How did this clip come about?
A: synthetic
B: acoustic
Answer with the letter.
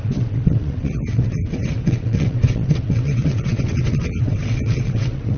A